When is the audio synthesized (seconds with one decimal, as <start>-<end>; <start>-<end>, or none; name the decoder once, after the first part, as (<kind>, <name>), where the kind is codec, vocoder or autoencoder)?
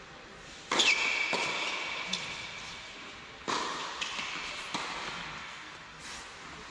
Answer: 5.4-6.0 (codec, SNAC)